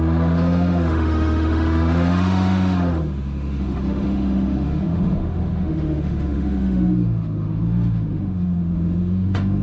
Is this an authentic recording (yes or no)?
no